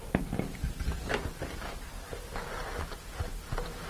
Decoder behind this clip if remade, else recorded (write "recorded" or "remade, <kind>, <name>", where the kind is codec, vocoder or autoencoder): recorded